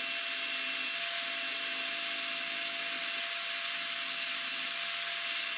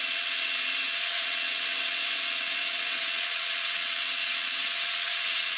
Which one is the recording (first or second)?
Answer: first